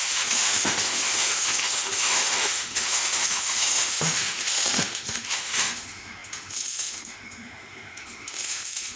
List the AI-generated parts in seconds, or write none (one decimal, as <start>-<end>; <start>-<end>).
0.0-9.0